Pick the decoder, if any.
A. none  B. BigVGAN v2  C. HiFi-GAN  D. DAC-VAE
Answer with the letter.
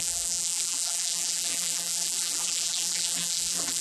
B